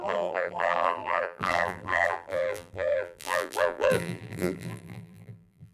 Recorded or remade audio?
remade